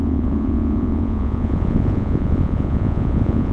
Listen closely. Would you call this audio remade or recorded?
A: remade